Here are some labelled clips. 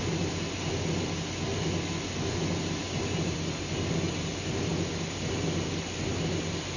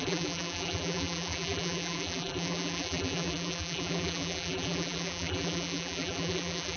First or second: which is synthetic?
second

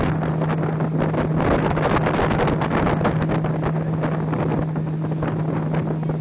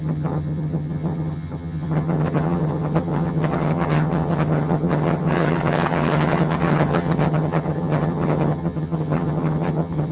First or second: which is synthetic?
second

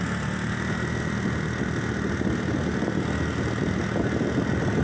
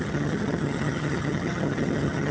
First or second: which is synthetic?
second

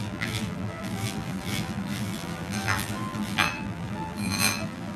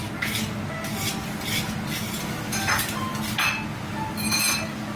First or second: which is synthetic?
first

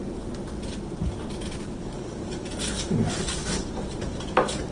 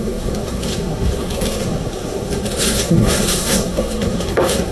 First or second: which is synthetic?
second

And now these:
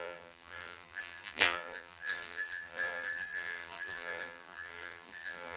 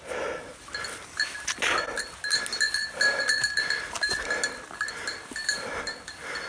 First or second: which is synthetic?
first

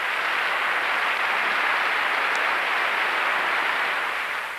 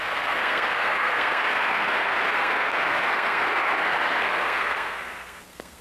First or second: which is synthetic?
second